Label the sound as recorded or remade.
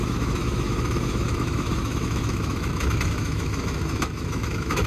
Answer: remade